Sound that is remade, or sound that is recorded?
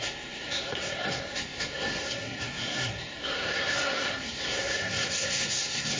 remade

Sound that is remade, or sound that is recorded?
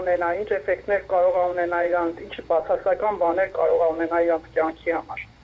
remade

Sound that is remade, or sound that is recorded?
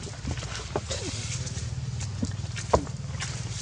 recorded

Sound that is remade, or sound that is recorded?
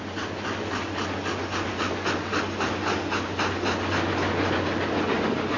recorded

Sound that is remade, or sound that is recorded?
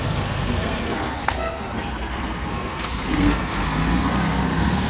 remade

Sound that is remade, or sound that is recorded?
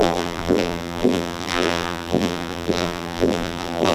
remade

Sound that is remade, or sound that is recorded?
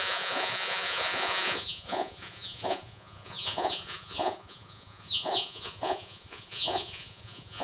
remade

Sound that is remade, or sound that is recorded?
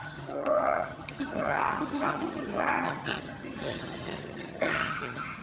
remade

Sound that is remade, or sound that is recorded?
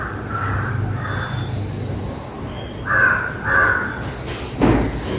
recorded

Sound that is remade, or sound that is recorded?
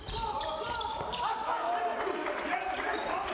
remade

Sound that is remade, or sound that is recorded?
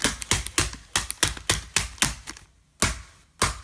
recorded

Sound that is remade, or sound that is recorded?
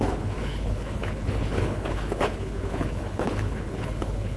remade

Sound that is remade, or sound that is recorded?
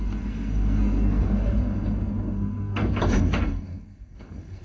remade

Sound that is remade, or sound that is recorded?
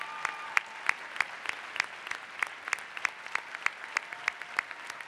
recorded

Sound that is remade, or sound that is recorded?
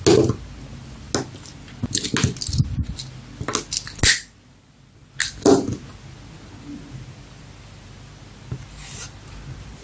recorded